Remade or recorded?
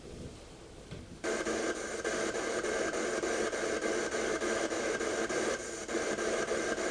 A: recorded